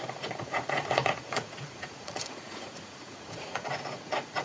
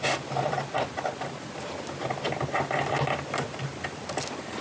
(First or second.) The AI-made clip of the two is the first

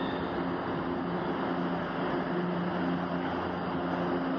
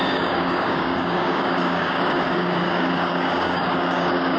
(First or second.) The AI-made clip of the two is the second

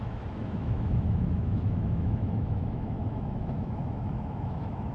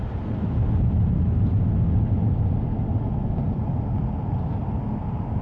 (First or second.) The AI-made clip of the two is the first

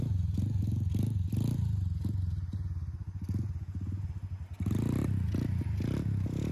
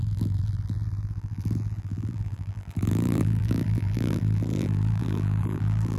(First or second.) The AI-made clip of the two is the second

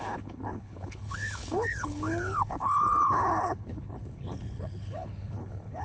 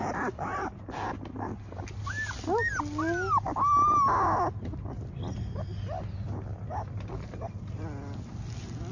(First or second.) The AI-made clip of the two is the first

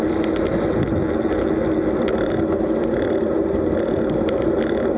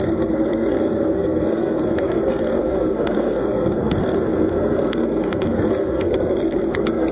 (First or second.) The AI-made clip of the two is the second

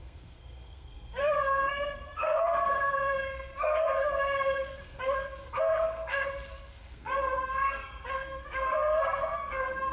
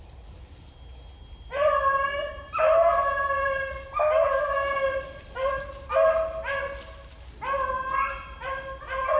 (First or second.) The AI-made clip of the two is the first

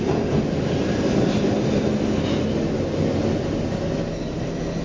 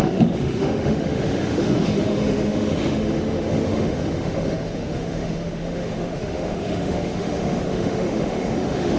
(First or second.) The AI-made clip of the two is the second